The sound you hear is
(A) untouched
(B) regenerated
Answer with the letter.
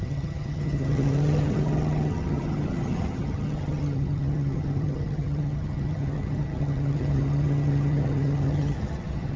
B